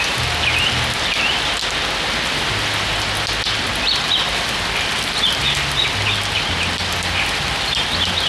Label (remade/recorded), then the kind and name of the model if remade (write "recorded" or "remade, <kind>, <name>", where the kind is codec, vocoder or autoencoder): recorded